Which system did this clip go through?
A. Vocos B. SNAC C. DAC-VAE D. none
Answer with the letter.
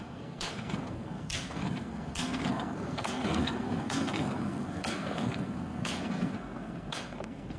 B